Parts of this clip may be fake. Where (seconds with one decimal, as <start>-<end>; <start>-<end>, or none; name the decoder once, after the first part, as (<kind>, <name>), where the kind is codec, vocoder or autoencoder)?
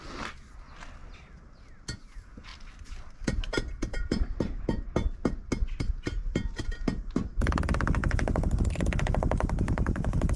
2.5-5.3 (vocoder, BigVGAN v2); 8.0-10.4